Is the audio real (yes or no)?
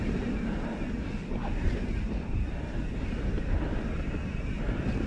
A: yes